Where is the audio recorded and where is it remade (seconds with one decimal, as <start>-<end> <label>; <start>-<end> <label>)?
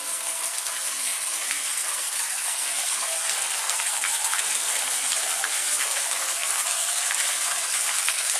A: 0.0-8.4 remade